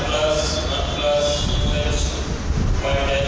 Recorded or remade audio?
recorded